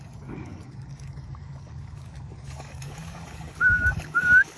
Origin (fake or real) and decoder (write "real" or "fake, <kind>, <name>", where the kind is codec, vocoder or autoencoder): fake, codec, DAC